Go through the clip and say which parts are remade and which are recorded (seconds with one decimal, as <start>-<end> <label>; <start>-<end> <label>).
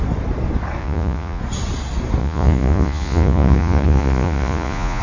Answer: 0.0-0.8 recorded; 0.8-1.4 remade; 1.4-2.2 recorded; 2.2-5.0 remade